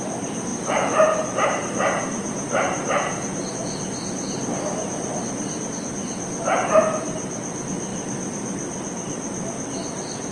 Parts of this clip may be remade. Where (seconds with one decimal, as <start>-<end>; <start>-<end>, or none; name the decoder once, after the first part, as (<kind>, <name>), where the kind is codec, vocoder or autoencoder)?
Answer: 0.5-3.5 (vocoder, BigVGAN v2)